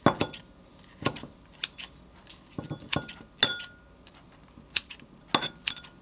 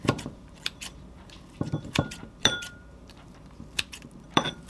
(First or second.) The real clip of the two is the first